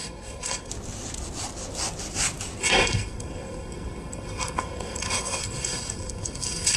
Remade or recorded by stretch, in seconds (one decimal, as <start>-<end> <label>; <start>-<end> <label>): 0.0-0.7 remade; 0.7-2.6 recorded; 2.6-6.8 remade